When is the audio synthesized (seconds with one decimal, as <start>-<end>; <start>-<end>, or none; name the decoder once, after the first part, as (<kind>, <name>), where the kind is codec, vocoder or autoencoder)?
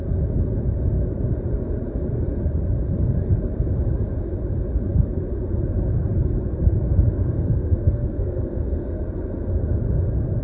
7.2-9.0 (codec, SNAC)